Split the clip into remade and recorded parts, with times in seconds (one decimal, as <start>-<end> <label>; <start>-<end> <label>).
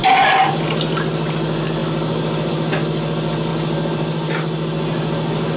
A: 0.0-0.6 remade; 0.6-3.5 recorded; 3.5-5.6 remade